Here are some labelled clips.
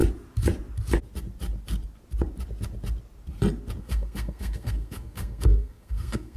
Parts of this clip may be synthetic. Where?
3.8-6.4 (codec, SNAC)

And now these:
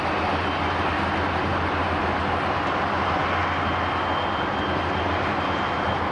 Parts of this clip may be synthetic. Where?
none